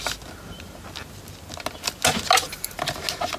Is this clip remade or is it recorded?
recorded